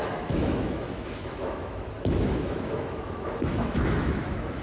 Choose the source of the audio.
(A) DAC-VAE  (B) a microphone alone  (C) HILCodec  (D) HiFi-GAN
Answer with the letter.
A